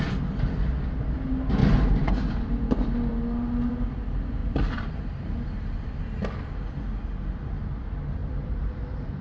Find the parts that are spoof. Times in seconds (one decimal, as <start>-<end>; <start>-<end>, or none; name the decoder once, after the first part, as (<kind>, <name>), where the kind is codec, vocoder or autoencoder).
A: 1.6-2.1 (vocoder, BigVGAN v2); 4.4-6.0; 8.2-9.2